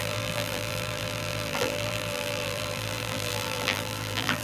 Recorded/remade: remade